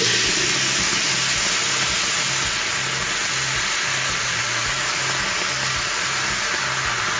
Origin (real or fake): real